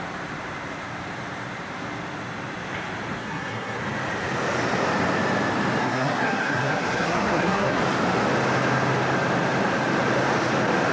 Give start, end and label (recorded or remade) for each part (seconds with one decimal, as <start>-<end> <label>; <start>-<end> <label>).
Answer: 0.0-3.2 recorded; 3.2-3.8 remade; 3.8-5.8 recorded; 5.8-7.8 remade; 7.8-10.9 recorded